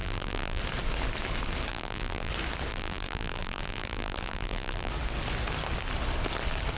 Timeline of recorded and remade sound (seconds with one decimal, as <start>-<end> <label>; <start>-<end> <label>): 0.0-0.6 remade; 0.6-1.7 recorded; 1.7-2.3 remade; 2.3-2.7 recorded; 2.7-4.9 remade; 4.9-6.8 recorded